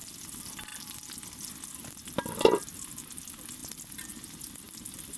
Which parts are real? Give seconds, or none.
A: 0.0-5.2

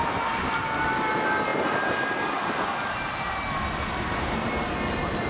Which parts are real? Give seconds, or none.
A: 0.0-5.3

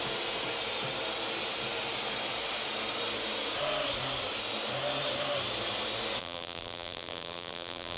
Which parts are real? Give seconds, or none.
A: 0.0-6.2

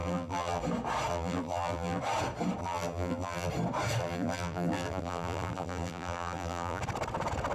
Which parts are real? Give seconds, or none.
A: 0.6-1.1; 2.0-2.6; 3.5-4.0; 6.8-7.5

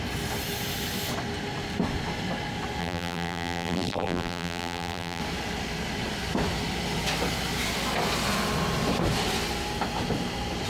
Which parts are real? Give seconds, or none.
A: 0.0-2.8; 5.2-10.7

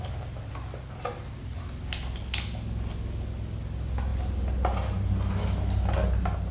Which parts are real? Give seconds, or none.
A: 0.0-6.5

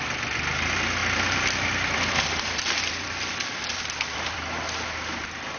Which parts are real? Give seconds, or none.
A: 0.0-1.0; 4.4-5.6